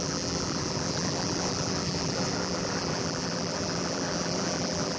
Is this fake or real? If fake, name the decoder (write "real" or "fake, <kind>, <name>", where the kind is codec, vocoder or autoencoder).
fake, vocoder, BigVGAN v2